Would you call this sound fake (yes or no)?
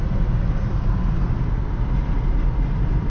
no